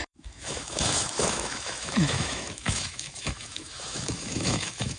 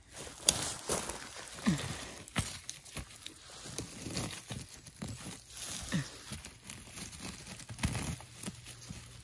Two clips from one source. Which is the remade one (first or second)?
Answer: first